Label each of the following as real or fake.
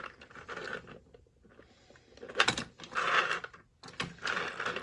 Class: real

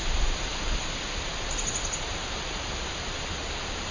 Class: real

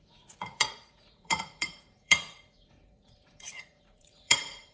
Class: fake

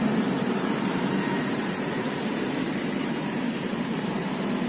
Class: fake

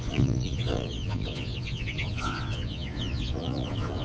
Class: fake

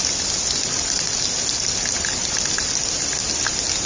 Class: real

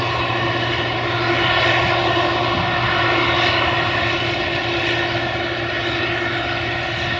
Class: real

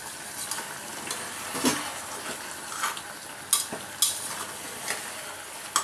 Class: real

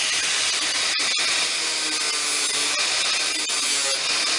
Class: real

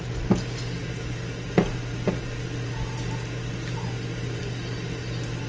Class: real